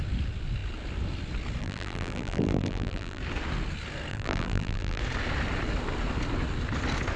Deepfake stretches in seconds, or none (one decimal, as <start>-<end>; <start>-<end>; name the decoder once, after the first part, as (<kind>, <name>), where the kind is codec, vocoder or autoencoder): 1.6-3.2 (vocoder, BigVGAN v2); 4.1-5.0